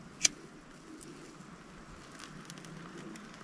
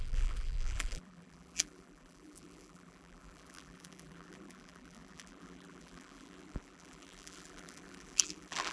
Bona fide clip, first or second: first